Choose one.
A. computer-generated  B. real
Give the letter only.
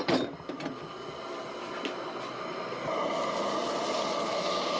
B